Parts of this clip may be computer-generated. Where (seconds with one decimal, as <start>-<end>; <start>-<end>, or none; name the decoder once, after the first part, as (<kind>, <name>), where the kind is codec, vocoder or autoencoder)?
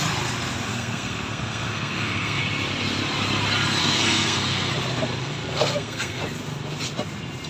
0.7-2.4 (codec, SNAC); 3.8-4.7; 5.2-6.2